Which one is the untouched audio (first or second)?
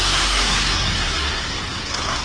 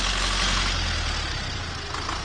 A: second